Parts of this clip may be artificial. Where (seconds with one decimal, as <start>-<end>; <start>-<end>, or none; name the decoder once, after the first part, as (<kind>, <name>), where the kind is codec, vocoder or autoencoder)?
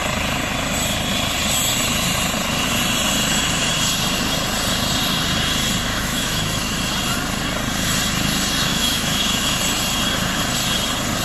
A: 5.9-6.8 (autoencoder, DAC-VAE); 8.7-9.6